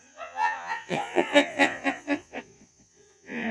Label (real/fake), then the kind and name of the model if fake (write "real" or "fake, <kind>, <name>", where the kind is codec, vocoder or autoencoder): fake, vocoder, Vocos